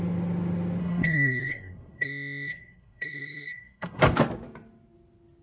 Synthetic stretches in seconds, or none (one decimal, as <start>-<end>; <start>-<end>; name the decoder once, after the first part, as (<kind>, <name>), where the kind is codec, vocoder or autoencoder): 0.8-4.0 (codec, SNAC)